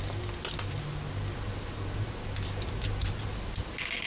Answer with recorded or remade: recorded